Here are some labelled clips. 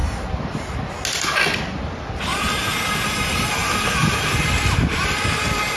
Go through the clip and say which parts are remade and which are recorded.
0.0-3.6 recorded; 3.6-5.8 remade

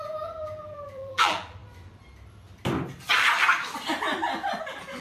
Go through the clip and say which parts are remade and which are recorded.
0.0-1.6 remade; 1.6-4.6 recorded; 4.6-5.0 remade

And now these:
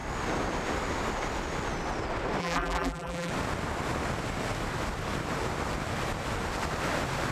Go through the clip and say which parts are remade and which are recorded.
0.0-2.4 recorded; 2.4-3.3 remade; 3.3-7.3 recorded

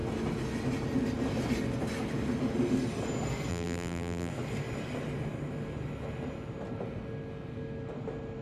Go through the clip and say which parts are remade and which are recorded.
0.0-3.5 recorded; 3.5-4.3 remade; 4.3-8.4 recorded

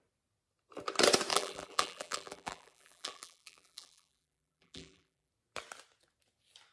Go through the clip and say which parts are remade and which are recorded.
0.0-1.3 recorded; 1.3-5.3 remade; 5.3-6.7 recorded

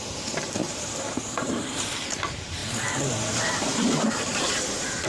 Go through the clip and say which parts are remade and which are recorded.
0.0-5.1 remade

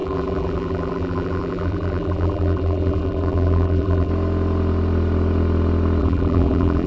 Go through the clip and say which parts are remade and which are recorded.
0.0-4.1 remade; 4.1-6.0 recorded; 6.0-6.9 remade

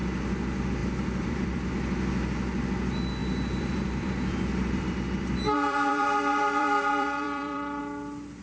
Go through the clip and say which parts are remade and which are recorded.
0.0-0.8 recorded; 0.8-1.7 remade; 1.7-3.2 recorded; 3.2-7.8 remade; 7.8-8.4 recorded